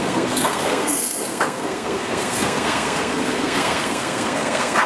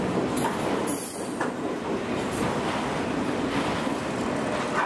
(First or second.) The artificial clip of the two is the first